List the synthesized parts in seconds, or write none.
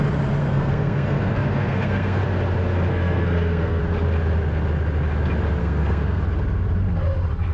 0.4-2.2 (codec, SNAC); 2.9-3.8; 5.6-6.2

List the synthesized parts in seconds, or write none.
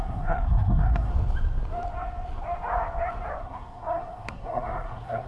0.0-1.1 (codec, SNAC); 3.4-5.3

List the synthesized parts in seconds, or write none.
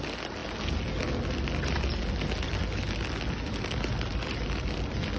none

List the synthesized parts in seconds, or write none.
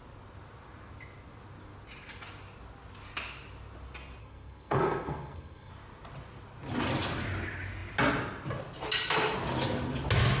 4.2-5.7 (codec, SNAC)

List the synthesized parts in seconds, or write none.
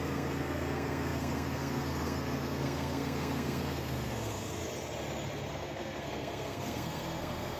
0.0-4.6 (codec, SNAC); 5.5-7.6